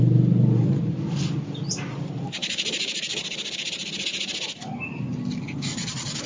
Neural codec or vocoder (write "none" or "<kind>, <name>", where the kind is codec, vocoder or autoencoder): none